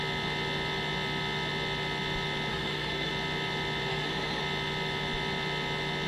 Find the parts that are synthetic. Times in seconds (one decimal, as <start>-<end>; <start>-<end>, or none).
2.5-3.1; 3.9-4.4